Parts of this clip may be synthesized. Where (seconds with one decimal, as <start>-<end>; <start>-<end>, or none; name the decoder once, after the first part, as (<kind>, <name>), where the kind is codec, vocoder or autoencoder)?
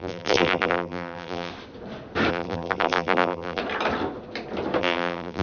0.0-1.5 (vocoder, BigVGAN v2); 2.3-3.6; 4.8-5.4